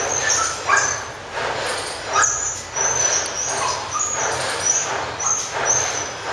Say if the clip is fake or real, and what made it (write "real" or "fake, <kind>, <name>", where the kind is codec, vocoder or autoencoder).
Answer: real